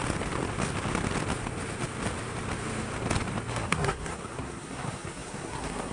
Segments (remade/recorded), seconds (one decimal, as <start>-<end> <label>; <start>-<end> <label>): 0.0-3.5 recorded; 3.5-5.9 remade